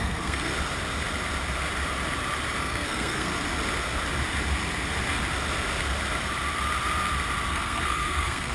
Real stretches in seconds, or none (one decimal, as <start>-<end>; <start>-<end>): 0.5-2.6; 3.3-7.5

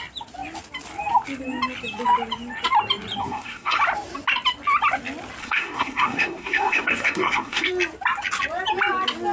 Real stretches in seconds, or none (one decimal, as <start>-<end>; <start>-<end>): 0.0-3.2; 3.8-5.4; 7.7-9.3

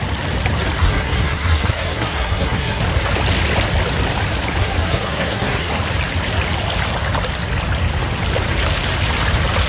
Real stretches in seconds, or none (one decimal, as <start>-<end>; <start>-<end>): 0.0-0.8; 2.8-4.6; 5.7-9.7

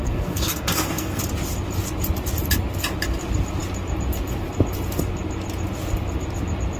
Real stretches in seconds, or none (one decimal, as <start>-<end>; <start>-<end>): 1.2-6.8